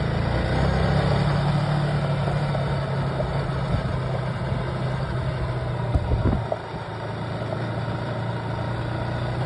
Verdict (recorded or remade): recorded